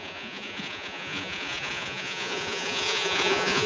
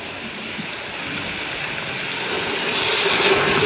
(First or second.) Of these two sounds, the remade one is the first